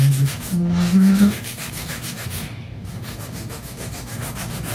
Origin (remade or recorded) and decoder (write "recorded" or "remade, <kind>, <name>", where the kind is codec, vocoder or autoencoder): remade, codec, DAC